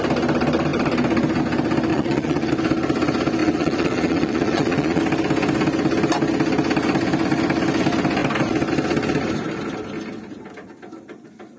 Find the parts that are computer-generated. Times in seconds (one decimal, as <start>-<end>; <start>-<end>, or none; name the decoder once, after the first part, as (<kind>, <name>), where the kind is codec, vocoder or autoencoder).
1.9-2.5 (vocoder, Vocos); 3.4-5.0